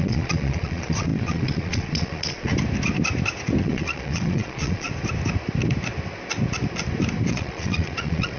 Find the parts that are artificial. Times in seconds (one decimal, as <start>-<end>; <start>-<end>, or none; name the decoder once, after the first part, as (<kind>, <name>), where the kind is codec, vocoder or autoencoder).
0.0-2.5 (vocoder, Vocos); 3.6-4.9; 7.3-8.4